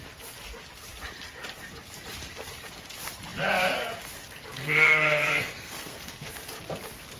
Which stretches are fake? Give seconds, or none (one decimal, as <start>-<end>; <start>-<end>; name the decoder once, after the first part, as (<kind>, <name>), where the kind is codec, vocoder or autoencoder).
4.6-6.3 (codec, SNAC)